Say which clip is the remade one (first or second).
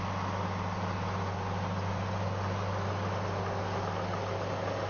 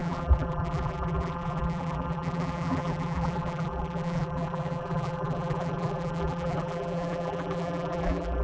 second